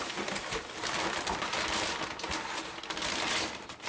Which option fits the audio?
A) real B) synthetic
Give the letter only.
A